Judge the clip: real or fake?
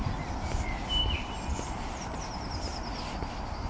real